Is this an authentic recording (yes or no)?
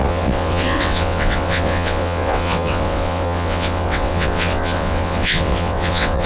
no